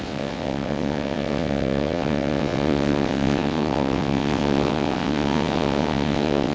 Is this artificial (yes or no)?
yes